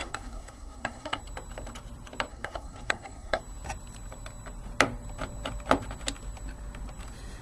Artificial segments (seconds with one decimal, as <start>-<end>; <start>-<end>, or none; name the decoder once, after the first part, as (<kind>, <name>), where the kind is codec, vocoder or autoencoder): 0.0-1.2 (codec, SNAC); 2.3-3.4